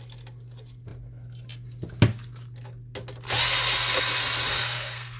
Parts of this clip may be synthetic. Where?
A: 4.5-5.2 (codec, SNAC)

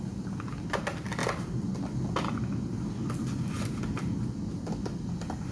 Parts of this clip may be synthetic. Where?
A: none